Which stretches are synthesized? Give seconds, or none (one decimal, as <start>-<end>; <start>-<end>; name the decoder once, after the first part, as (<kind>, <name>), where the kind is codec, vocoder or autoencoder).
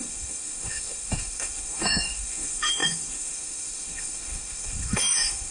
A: 0.0-5.5 (autoencoder, DAC-VAE)